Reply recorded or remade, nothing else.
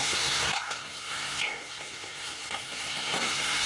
remade